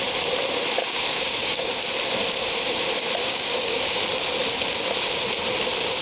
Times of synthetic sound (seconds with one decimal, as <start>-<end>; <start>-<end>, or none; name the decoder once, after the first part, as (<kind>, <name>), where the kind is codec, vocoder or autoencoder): 0.8-1.7 (codec, DAC); 3.2-4.0